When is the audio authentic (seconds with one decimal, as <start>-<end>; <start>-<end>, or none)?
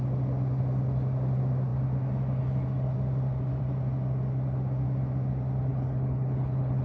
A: 0.0-5.7